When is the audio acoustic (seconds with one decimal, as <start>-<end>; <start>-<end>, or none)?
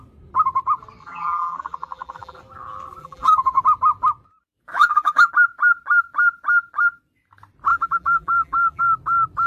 0.0-1.0; 2.4-3.0; 3.6-4.7; 5.3-7.7; 8.8-9.5